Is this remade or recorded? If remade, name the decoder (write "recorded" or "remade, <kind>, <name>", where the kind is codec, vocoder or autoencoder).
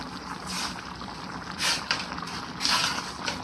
recorded